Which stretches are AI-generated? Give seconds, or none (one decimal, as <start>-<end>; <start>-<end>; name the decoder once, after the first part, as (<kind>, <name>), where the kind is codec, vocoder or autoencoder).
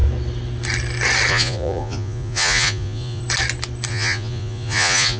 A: 1.3-3.2 (vocoder, Vocos); 3.9-5.2